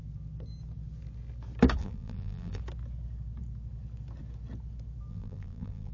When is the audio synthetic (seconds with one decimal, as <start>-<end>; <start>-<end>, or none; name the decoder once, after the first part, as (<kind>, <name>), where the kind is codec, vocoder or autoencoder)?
1.8-2.6 (vocoder, BigVGAN v2); 5.1-5.9